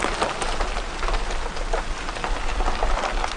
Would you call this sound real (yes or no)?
yes